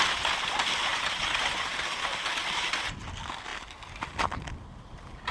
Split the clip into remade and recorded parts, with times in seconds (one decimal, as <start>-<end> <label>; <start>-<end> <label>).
0.0-0.9 recorded; 0.9-2.2 remade; 2.2-5.3 recorded